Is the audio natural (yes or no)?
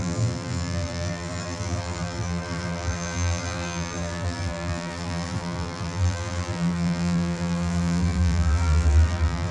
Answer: no